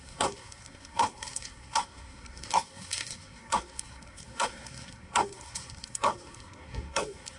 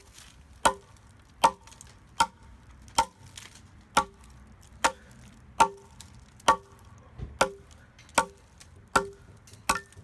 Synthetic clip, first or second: first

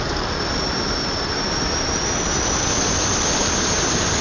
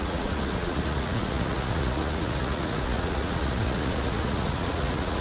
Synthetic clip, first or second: second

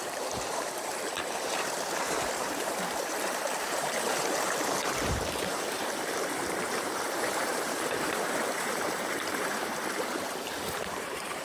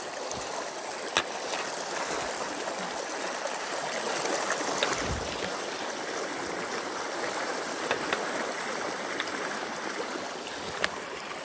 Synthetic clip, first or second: first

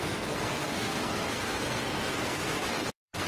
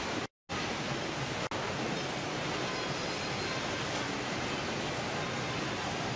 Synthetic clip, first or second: first